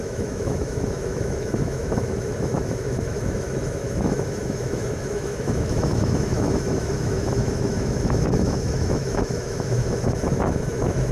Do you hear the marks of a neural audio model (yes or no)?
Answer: yes